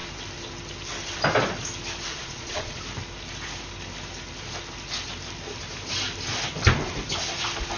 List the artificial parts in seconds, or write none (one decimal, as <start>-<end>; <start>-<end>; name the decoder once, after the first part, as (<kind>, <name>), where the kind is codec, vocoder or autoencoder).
2.1-2.8 (vocoder, Vocos)